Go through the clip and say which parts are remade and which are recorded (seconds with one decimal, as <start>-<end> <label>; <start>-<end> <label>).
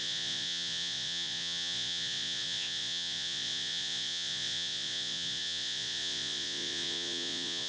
0.0-7.7 remade